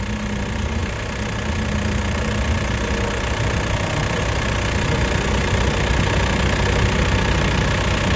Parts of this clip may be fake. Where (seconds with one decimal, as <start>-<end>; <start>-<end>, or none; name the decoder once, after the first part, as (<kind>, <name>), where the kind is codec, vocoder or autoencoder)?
none